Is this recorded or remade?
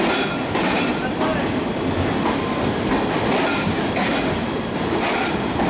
recorded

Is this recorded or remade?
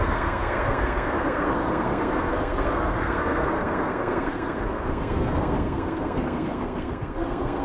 remade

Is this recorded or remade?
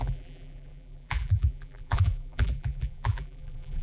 remade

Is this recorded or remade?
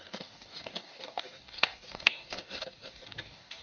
remade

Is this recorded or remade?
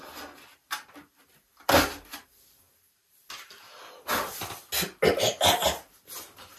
recorded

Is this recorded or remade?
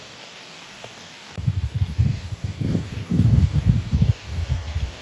remade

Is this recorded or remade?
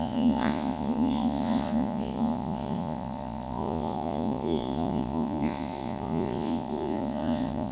remade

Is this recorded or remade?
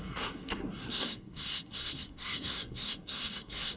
remade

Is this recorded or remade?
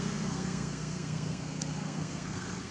remade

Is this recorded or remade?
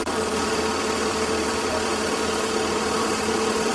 remade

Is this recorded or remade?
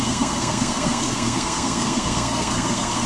remade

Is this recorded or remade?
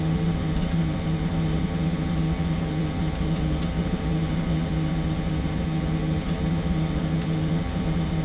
remade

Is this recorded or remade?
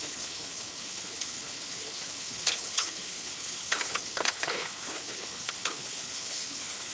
remade